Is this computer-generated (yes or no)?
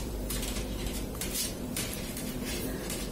yes